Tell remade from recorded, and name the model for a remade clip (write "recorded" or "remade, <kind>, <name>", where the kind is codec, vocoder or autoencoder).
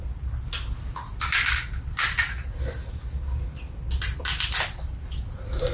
recorded